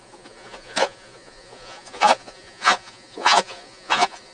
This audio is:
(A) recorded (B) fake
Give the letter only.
B